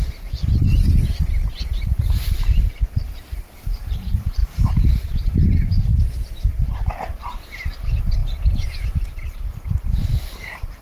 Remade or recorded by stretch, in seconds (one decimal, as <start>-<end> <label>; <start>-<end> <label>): 0.0-10.8 remade